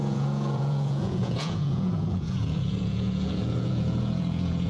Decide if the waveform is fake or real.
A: fake